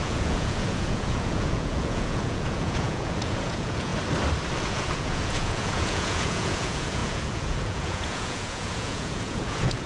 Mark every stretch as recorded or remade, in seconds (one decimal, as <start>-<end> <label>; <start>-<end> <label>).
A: 0.0-3.9 remade; 3.9-4.6 recorded; 4.6-9.9 remade